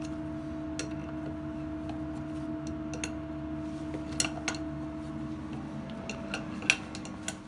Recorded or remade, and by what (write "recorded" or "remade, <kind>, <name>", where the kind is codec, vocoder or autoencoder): recorded